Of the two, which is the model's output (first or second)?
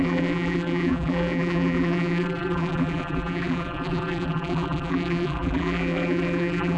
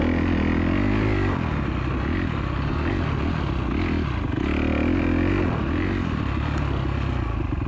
first